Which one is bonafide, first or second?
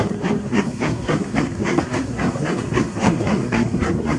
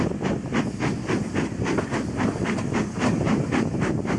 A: second